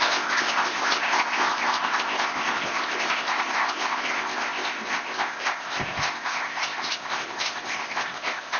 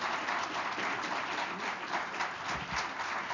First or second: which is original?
second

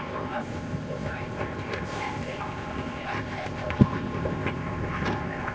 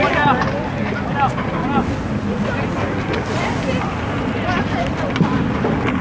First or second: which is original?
second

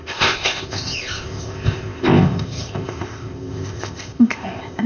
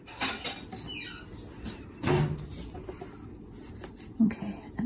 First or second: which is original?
second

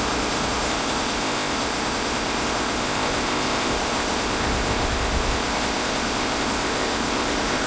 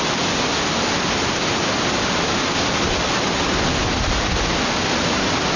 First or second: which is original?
second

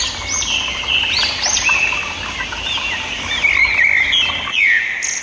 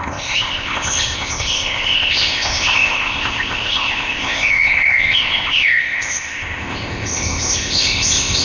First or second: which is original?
first